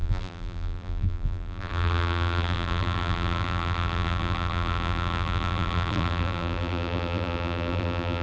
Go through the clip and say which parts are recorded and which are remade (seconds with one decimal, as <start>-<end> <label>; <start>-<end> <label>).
0.0-8.2 remade

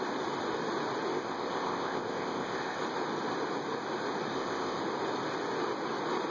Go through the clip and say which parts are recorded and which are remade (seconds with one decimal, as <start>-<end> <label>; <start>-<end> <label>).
0.0-1.1 recorded; 1.1-2.8 remade; 2.8-4.3 recorded; 4.3-4.8 remade; 4.8-6.3 recorded